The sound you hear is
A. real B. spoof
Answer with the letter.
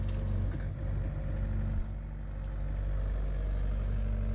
A